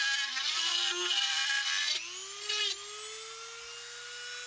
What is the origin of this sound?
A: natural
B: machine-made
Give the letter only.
A